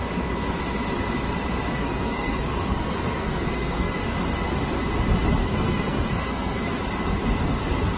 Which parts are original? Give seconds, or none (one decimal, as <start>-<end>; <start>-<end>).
0.0-1.7; 3.9-5.4; 6.8-8.0

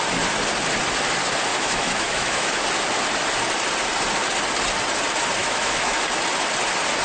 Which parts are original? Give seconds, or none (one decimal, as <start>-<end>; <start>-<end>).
0.0-1.5; 2.6-5.4; 6.0-7.0

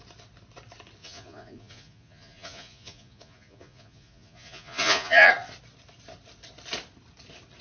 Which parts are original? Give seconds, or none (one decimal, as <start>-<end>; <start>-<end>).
0.0-1.0; 5.3-7.6

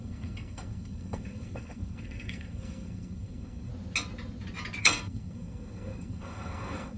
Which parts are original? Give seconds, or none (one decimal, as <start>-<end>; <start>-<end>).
3.7-4.8

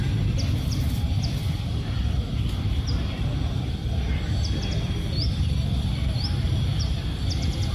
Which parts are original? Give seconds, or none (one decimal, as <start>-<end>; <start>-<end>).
0.0-7.7

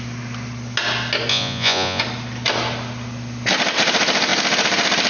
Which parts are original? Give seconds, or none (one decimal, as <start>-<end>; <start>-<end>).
0.0-1.3; 2.0-5.1

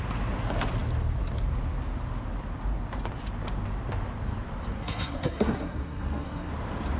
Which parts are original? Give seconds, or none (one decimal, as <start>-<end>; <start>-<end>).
0.0-4.7; 6.5-7.0

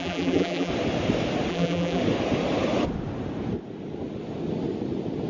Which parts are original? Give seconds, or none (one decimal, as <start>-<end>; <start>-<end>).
0.7-1.5; 2.0-5.3